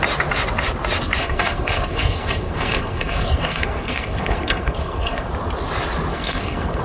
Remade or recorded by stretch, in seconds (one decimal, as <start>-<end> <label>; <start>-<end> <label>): 0.0-1.2 recorded; 1.2-5.3 remade; 5.3-6.1 recorded; 6.1-6.8 remade